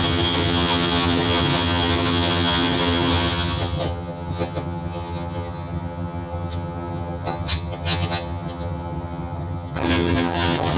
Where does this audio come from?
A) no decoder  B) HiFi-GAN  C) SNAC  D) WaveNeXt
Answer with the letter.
B